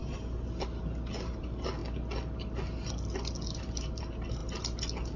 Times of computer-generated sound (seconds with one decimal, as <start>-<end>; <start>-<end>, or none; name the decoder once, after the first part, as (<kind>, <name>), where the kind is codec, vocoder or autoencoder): none